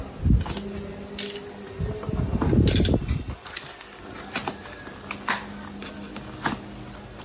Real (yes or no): yes